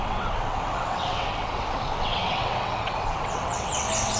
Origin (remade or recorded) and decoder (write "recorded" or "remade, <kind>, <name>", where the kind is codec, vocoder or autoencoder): remade, vocoder, WaveNeXt